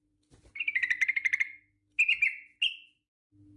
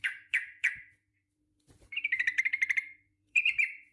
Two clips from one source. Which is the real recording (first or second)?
first